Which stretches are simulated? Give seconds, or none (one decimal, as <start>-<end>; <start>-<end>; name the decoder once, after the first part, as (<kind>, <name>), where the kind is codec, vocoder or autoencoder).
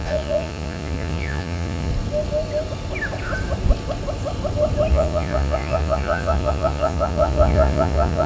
0.0-1.9 (vocoder, Vocos); 4.9-8.3